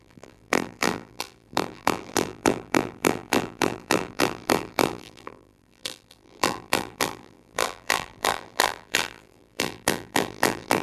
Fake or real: fake